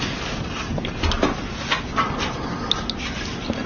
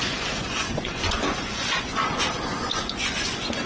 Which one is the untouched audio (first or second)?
first